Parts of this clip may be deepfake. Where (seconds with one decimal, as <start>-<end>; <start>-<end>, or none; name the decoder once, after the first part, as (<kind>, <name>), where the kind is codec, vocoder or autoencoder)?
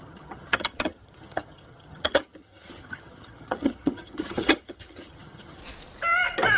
0.0-5.6 (vocoder, HiFi-GAN)